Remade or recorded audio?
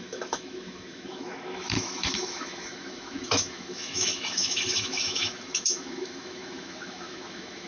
remade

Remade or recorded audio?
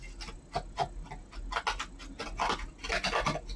recorded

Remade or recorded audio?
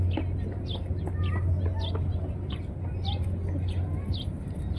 recorded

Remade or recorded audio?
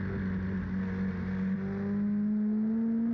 recorded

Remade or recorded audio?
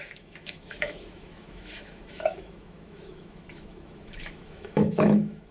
remade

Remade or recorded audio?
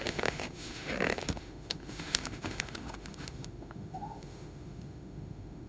remade